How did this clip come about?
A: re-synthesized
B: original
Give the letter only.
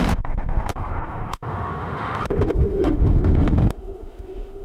A